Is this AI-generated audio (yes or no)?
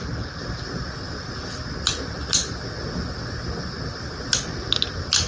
no